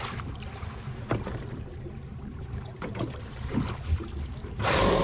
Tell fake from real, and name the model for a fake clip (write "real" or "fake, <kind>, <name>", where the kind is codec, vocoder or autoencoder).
fake, vocoder, BigVGAN v2